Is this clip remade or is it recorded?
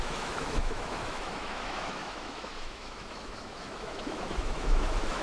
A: remade